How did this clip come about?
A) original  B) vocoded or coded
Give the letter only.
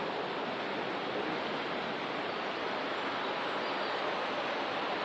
A